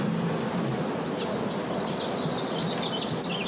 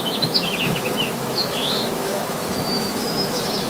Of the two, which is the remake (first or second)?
second